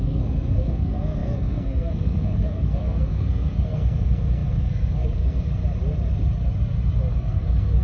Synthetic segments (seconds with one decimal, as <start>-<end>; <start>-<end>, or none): 0.0-5.6; 7.1-7.8